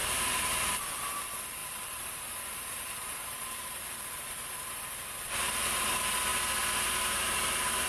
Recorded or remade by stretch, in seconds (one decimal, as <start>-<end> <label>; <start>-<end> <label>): 0.0-1.0 remade; 1.0-1.6 recorded; 1.6-5.7 remade; 5.7-7.9 recorded